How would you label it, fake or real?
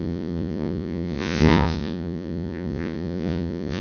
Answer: fake